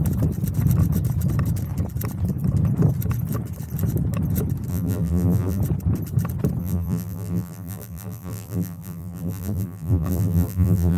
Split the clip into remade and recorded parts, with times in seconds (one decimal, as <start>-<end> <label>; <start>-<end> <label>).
0.0-4.7 recorded; 4.7-5.6 remade; 5.6-6.6 recorded; 6.6-11.0 remade